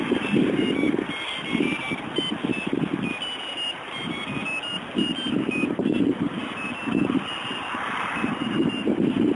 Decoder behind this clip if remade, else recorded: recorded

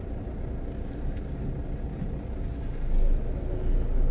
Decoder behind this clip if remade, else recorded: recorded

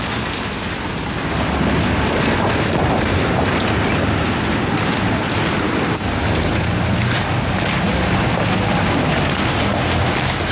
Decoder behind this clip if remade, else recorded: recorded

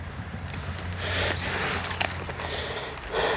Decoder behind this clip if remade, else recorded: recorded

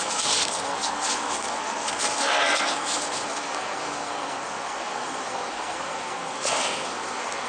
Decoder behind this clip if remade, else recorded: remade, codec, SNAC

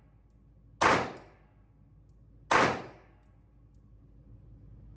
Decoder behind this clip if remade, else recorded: recorded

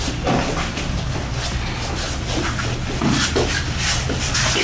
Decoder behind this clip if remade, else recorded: recorded